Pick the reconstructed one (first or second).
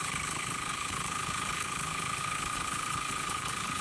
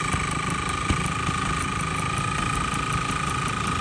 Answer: first